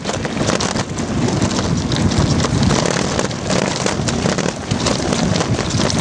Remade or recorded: recorded